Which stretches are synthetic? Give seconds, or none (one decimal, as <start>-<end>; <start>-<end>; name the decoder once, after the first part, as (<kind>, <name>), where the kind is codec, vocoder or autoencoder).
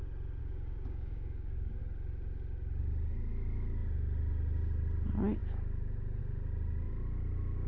0.4-1.8 (codec, DAC)